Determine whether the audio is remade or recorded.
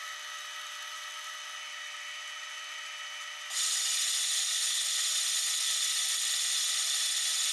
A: recorded